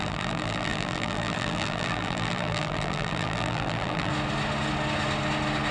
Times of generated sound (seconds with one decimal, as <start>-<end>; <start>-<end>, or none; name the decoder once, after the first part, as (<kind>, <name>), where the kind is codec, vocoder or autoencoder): 0.0-4.1 (vocoder, BigVGAN v2)